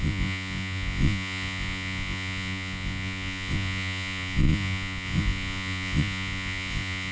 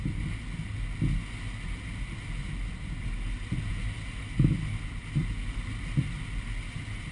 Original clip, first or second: second